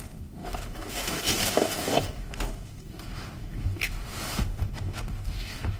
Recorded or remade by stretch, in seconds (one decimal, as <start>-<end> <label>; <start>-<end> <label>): 0.0-5.8 remade